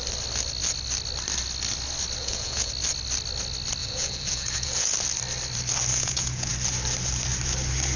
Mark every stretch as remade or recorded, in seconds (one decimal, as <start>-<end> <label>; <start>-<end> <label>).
0.0-2.2 recorded; 2.2-2.7 remade; 2.7-3.8 recorded; 3.8-4.9 remade; 4.9-5.9 recorded; 5.9-6.5 remade; 6.5-8.0 recorded